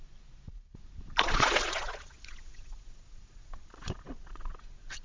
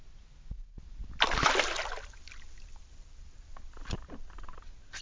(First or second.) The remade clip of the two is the first